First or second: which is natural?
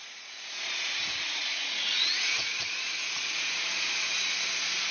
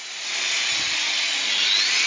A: second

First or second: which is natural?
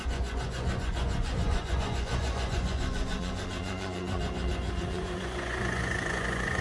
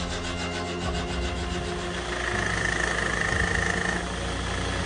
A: second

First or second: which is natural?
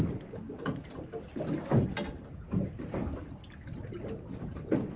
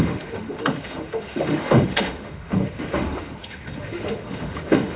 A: first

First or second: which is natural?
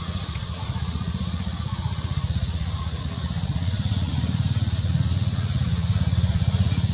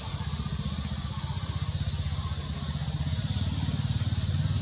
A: second